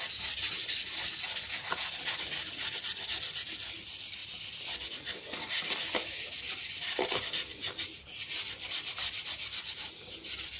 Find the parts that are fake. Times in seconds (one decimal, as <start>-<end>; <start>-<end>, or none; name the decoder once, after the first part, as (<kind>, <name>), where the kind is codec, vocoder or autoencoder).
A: none